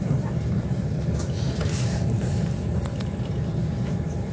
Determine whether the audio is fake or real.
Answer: fake